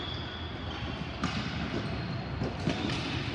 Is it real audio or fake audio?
real